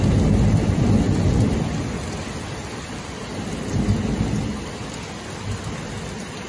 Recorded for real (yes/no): yes